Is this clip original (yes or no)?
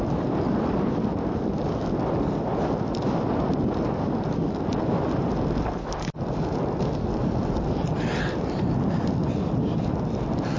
yes